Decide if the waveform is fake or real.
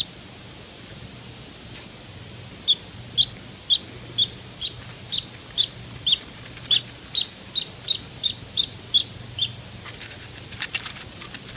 real